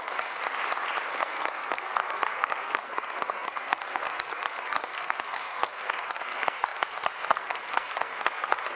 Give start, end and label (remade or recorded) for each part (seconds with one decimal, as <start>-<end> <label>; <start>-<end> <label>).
0.0-0.4 remade; 0.4-1.1 recorded; 1.1-8.8 remade

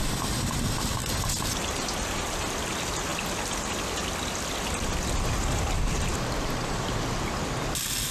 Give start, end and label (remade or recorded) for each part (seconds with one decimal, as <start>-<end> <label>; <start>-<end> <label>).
0.0-8.1 recorded

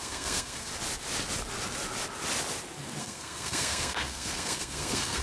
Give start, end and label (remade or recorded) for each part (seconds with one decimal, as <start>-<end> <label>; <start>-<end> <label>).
0.0-0.7 remade; 0.7-3.0 recorded; 3.0-5.2 remade

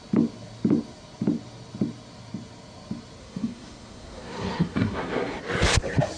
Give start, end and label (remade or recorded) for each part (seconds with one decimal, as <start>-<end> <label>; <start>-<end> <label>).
0.0-3.2 recorded; 3.2-5.4 remade; 5.4-6.2 recorded

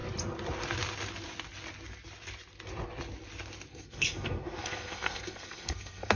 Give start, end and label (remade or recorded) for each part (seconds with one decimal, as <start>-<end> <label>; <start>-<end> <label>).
0.0-3.7 recorded; 3.7-6.2 remade

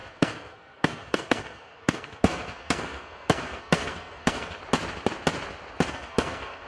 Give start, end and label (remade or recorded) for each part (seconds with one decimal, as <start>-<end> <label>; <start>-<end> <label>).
0.0-4.6 remade; 4.6-5.9 recorded; 5.9-6.7 remade